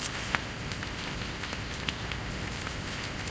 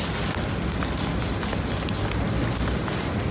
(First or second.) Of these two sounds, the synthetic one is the first